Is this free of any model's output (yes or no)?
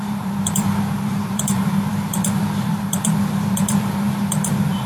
no